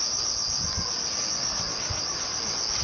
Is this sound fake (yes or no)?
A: no